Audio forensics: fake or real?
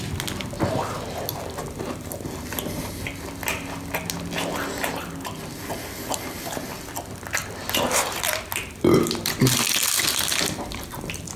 real